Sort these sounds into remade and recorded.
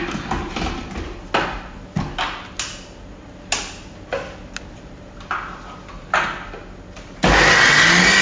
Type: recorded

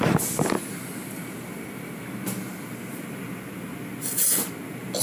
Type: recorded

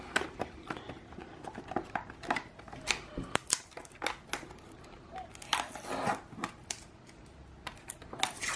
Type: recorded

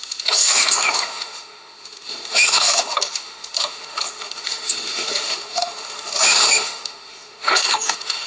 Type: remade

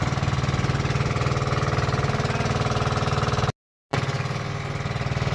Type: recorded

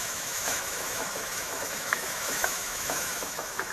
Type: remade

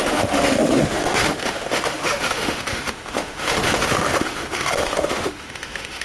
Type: remade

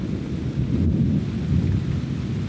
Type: recorded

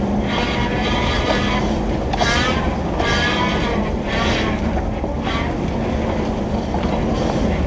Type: recorded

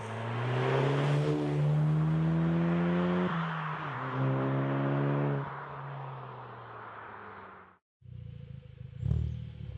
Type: recorded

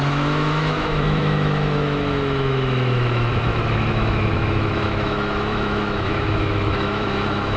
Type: remade